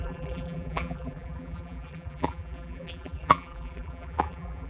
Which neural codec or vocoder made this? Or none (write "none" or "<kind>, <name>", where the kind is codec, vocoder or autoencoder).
vocoder, BigVGAN v2